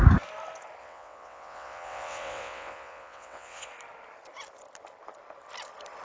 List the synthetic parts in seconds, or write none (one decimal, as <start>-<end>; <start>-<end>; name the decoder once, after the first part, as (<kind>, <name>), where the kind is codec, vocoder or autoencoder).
0.8-3.7 (vocoder, WaveNeXt)